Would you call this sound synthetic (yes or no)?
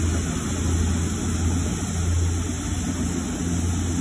no